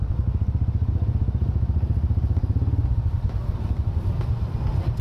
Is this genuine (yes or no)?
yes